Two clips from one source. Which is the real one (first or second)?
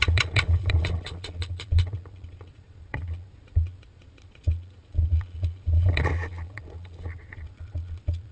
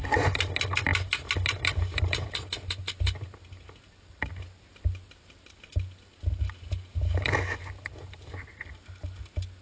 second